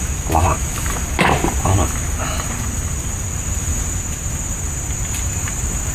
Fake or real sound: real